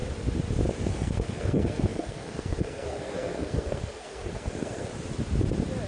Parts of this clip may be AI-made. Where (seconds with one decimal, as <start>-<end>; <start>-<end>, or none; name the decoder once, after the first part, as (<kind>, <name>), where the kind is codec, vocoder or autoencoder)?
0.8-4.9 (codec, SNAC)